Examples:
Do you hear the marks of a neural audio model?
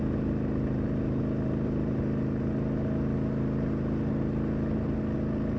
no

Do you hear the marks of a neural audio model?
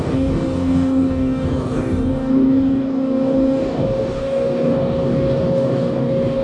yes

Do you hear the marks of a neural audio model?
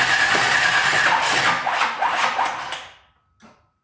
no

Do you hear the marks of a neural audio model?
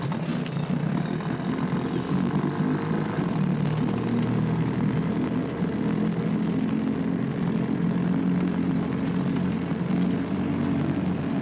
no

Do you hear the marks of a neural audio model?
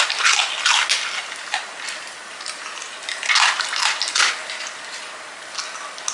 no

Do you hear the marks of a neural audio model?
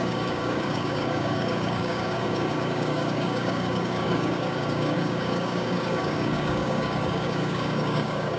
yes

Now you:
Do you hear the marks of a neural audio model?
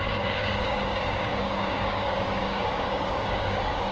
yes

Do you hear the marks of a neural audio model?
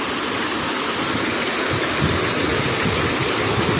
no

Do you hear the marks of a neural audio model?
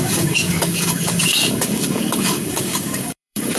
yes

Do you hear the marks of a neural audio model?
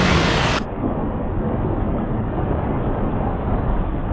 yes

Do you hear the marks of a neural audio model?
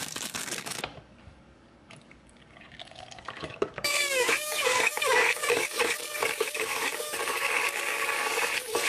yes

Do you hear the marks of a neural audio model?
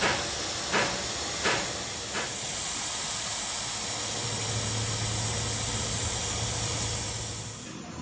no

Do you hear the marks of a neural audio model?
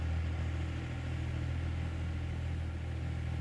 no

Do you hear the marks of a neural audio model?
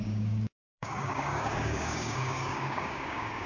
yes